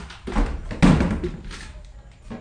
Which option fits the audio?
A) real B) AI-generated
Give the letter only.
A